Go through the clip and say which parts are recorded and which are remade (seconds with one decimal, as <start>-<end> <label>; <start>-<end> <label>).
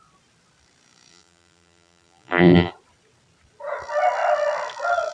0.0-1.1 recorded; 1.1-2.7 remade; 2.7-5.1 recorded